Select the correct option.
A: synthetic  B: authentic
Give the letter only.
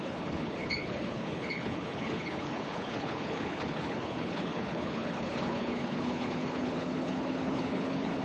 A